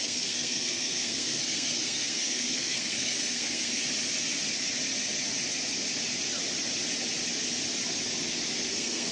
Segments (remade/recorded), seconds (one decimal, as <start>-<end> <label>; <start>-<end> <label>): 0.0-3.8 remade; 3.8-8.6 recorded; 8.6-9.1 remade